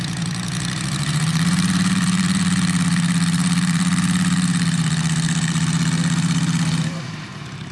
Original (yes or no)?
no